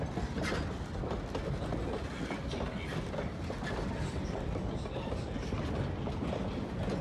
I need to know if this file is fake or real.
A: real